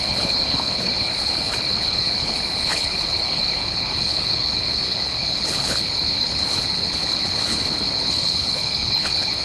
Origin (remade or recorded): remade